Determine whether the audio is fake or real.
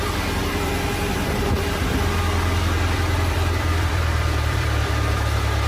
fake